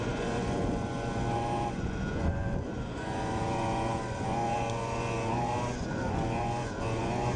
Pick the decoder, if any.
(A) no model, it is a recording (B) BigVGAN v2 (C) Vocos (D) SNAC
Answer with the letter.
C